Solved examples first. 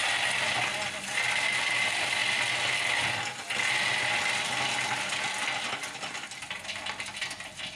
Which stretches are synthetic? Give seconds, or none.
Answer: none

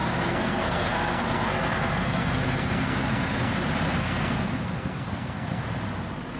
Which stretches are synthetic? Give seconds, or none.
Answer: 0.0-3.5 (codec, SNAC); 4.0-5.6

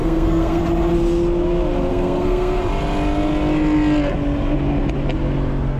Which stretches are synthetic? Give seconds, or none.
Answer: 0.0-0.6 (codec, SNAC); 1.9-2.6

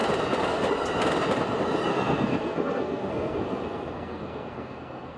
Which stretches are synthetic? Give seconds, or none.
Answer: 1.9-5.2 (codec, SNAC)

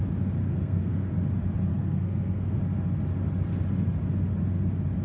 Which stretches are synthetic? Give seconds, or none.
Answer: 0.4-1.1 (codec, SNAC); 1.7-2.6

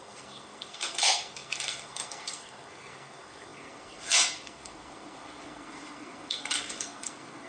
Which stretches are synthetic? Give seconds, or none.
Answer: 0.0-7.5 (codec, SNAC)

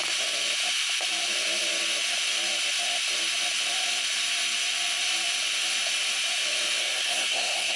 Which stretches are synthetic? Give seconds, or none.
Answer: 6.8-7.8 (codec, SNAC)

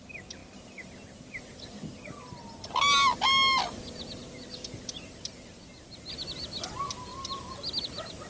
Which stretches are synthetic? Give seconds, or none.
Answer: none